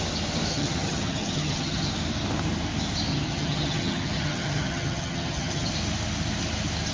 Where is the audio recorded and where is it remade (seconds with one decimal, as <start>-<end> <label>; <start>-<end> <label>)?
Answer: 0.0-0.5 recorded; 0.5-1.9 remade; 1.9-3.1 recorded; 3.1-5.7 remade; 5.7-6.9 recorded